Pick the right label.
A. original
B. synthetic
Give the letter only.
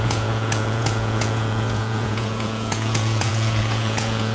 B